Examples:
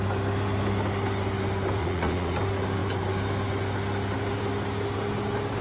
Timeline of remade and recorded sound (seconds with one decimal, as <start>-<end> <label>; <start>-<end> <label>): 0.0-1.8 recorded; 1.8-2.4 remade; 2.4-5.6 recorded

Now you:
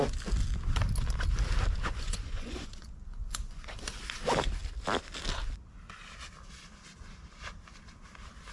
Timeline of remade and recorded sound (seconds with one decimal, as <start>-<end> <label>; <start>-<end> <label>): 0.0-1.9 recorded; 1.9-4.0 remade; 4.0-8.5 recorded

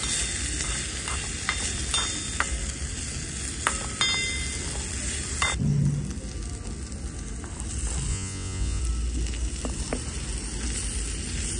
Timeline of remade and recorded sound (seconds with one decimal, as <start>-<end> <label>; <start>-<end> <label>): 0.0-8.1 recorded; 8.1-8.8 remade; 8.8-11.6 recorded

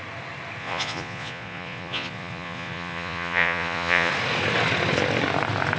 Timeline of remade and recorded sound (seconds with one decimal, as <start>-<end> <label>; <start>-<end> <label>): 0.0-0.6 recorded; 0.6-4.1 remade; 4.1-5.8 recorded